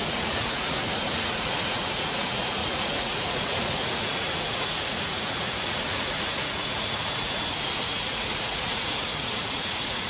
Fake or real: fake